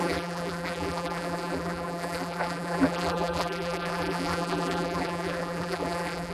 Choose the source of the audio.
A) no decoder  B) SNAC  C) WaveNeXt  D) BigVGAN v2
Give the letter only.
D